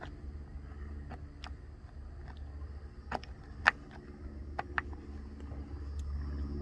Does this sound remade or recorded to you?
recorded